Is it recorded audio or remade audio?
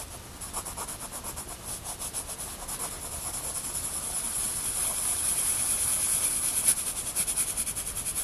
recorded